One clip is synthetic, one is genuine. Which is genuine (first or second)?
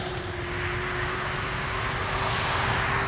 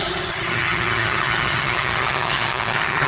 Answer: first